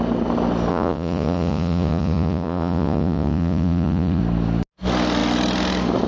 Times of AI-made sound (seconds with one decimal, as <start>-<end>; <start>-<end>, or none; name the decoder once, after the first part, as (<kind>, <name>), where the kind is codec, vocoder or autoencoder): 0.7-4.2 (vocoder, Vocos)